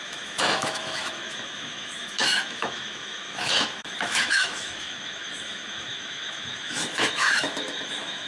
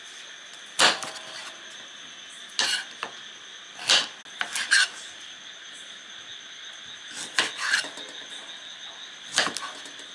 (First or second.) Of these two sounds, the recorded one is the second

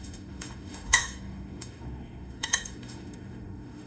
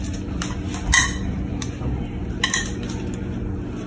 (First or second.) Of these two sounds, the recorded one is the second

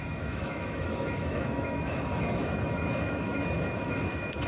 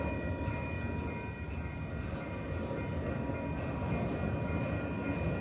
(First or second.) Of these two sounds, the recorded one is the second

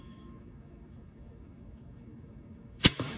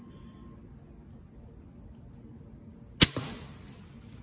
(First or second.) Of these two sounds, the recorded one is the second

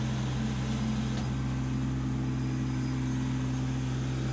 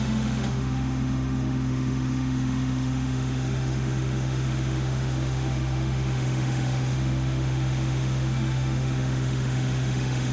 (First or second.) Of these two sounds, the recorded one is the first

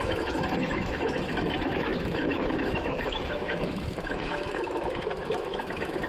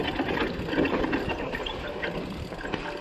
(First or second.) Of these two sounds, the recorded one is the second